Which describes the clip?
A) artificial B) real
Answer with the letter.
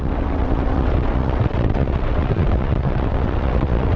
A